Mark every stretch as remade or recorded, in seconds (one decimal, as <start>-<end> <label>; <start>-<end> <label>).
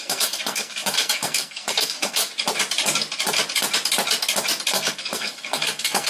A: 0.0-2.3 remade; 2.3-4.7 recorded; 4.7-6.1 remade